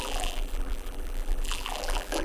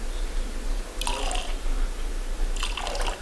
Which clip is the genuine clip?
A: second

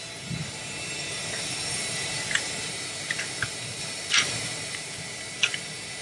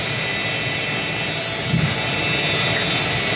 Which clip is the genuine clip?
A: second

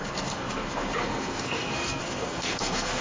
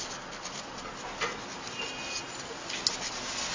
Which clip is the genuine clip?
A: second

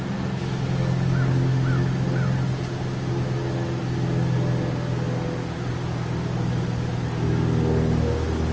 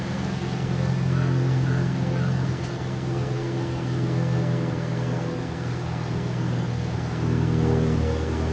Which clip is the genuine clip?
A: first